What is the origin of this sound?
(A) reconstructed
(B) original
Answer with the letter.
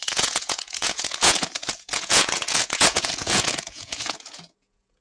A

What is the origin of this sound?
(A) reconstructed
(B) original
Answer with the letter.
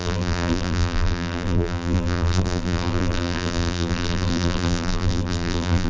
A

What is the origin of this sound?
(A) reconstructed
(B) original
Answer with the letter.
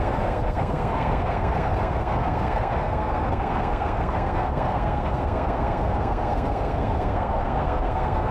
A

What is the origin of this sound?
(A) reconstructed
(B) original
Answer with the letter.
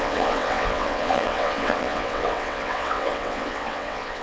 A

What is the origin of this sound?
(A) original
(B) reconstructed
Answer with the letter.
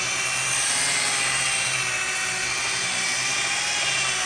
A